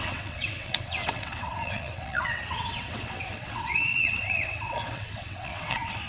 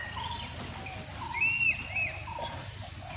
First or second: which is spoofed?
first